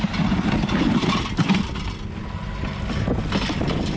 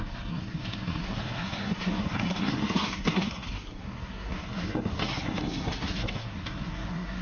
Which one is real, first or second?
first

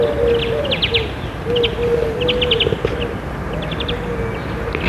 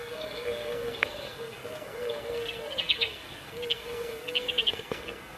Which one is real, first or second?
first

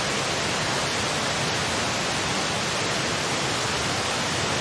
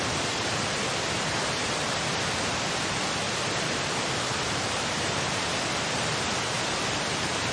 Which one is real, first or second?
first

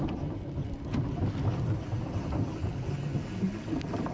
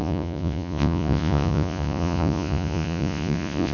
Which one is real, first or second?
first